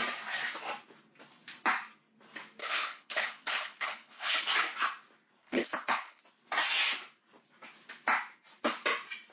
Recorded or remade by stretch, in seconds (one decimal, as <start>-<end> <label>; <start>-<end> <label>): 0.0-2.6 recorded; 2.6-4.4 remade; 4.4-5.4 recorded; 5.4-6.2 remade; 6.2-9.3 recorded